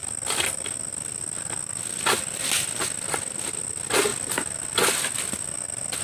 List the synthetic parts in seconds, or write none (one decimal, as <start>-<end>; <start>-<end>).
none